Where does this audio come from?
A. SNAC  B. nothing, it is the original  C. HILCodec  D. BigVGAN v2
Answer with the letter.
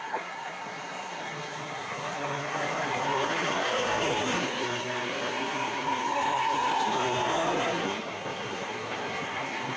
A